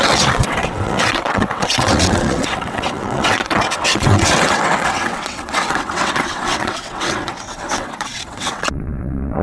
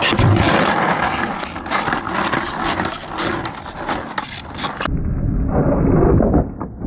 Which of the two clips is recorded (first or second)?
second